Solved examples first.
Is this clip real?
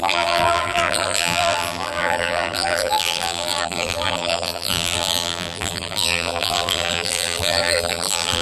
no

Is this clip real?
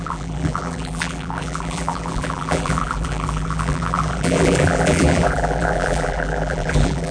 no